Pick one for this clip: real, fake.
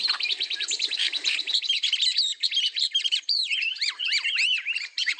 fake